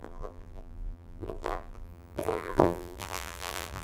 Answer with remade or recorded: remade